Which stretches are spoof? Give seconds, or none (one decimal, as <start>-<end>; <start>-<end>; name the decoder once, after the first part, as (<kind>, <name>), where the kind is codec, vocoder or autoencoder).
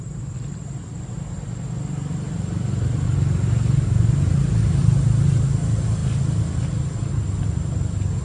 none